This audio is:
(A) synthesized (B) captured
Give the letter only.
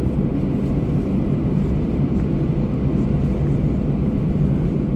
B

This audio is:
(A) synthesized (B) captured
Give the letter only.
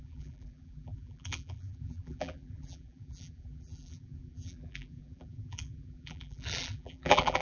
A